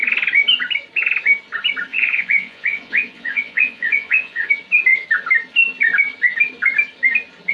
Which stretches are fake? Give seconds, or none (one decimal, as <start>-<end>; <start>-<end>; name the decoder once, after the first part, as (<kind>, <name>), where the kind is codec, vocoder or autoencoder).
1.9-4.5 (vocoder, Vocos)